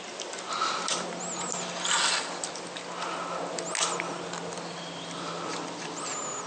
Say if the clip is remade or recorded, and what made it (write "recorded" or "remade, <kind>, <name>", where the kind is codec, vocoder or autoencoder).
recorded